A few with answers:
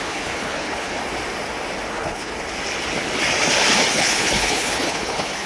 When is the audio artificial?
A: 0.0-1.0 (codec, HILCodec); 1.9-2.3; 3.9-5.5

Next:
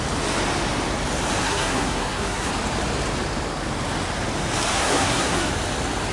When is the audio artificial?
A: 1.4-2.5 (codec, SNAC); 4.7-5.5

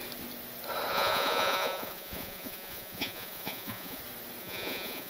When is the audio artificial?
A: 0.9-4.0 (vocoder, Vocos); 4.4-5.1

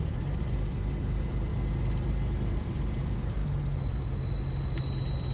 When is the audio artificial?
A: 0.0-1.5 (vocoder, BigVGAN v2); 2.5-3.4; 4.6-5.3

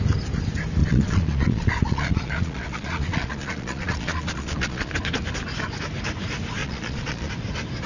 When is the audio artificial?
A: 0.8-4.9 (vocoder, Vocos); 6.6-7.3

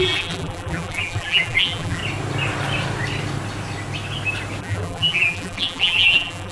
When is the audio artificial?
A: 0.0-2.0 (vocoder, BigVGAN v2); 4.6-6.5

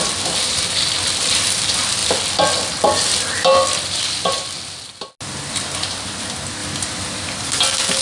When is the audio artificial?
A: none

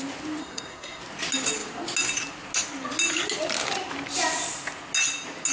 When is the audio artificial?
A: 0.4-1.0 (codec, SNAC)